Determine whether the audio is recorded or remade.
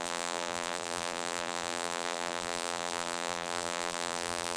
remade